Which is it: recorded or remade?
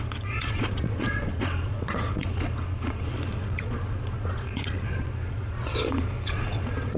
remade